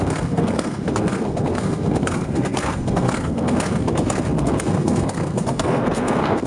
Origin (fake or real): fake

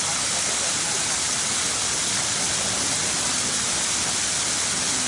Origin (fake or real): real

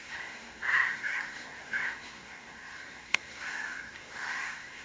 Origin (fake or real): fake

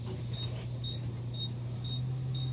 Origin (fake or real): real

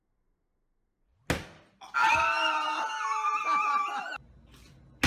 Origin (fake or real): real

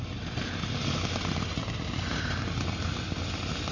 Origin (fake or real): real